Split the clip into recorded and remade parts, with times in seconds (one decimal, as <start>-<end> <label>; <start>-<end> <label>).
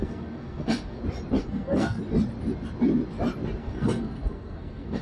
0.0-1.0 remade; 1.0-1.4 recorded; 1.4-2.0 remade; 2.0-3.6 recorded; 3.6-5.0 remade